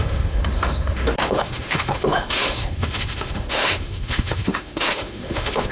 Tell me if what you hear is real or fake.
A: fake